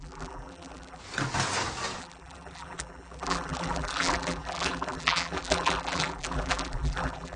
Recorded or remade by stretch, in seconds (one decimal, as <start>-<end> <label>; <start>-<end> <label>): 0.0-1.0 remade; 1.0-2.0 recorded; 2.0-7.4 remade